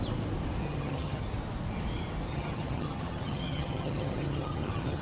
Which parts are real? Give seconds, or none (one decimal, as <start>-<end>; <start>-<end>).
0.0-0.6; 1.2-2.3